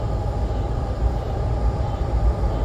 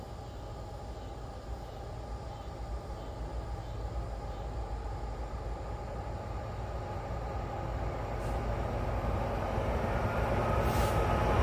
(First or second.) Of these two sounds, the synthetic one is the first